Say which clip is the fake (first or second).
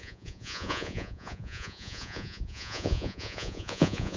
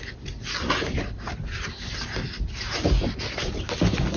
first